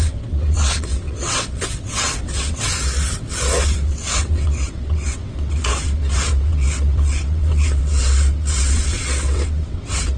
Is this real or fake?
fake